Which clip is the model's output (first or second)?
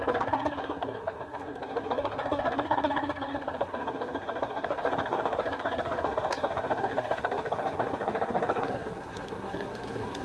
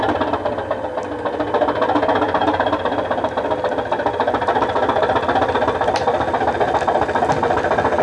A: first